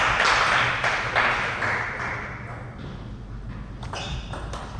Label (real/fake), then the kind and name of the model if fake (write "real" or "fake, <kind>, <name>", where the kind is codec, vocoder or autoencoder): real